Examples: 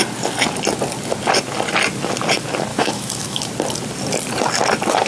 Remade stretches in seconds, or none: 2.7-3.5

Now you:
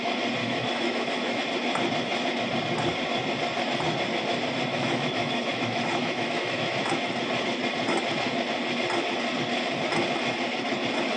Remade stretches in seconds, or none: 0.4-1.4; 4.7-6.7

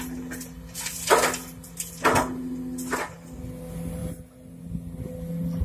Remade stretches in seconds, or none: none

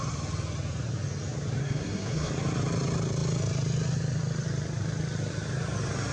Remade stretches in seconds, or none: 1.6-2.3

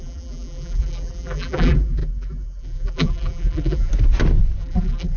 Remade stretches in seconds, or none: 0.0-3.9; 4.6-5.2

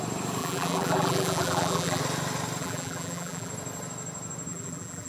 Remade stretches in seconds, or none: 0.4-2.0; 2.6-3.5; 4.5-5.1

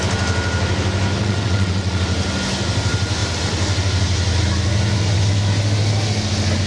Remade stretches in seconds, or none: 1.2-2.0